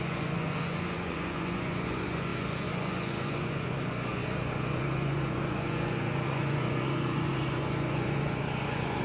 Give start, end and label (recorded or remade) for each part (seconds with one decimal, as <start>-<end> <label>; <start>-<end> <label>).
0.0-9.0 remade

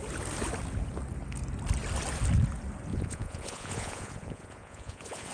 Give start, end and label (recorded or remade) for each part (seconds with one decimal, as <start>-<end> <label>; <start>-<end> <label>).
0.0-2.9 recorded; 2.9-5.3 remade

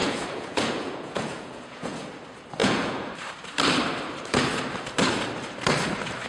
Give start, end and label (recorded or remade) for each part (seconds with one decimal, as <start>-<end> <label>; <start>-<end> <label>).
0.0-2.1 remade; 2.1-2.6 recorded; 2.6-3.1 remade; 3.1-6.3 recorded

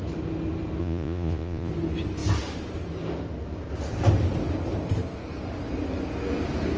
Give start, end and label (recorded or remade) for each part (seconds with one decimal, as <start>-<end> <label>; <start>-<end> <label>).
0.0-0.8 recorded; 0.8-1.7 remade; 1.7-6.8 recorded

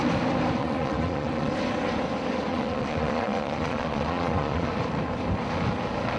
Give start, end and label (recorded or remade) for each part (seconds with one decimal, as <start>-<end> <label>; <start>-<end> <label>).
0.0-0.6 recorded; 0.6-1.5 remade; 1.5-2.5 recorded; 2.5-4.7 remade; 4.7-6.2 recorded